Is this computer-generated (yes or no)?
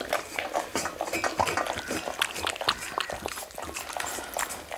no